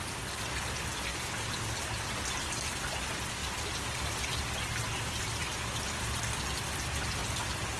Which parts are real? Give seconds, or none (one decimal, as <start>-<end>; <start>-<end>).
0.0-1.1; 1.7-3.4; 6.1-7.8